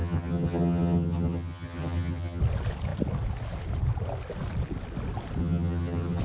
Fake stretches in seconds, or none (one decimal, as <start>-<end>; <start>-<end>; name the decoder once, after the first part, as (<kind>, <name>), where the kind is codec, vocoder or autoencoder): 0.0-2.4 (vocoder, HiFi-GAN); 5.4-6.2